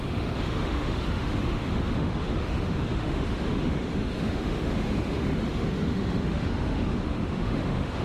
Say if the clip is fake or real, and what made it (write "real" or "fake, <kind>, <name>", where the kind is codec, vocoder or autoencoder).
fake, autoencoder, DAC-VAE